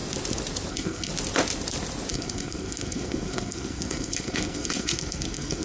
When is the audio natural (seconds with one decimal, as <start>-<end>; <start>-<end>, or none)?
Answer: 0.0-0.7; 1.1-2.1